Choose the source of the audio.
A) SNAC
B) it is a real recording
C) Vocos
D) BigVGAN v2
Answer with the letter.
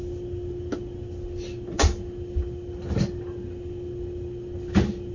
B